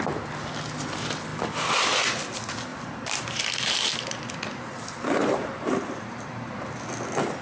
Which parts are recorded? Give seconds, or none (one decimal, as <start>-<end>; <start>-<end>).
0.0-2.7; 3.4-5.2; 6.5-7.4